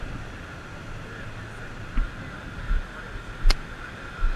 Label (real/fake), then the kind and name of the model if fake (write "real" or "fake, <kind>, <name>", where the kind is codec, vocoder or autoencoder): real